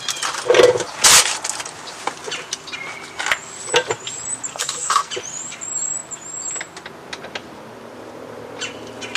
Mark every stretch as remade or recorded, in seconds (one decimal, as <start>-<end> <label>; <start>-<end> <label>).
0.0-4.5 recorded; 4.5-5.1 remade; 5.1-9.2 recorded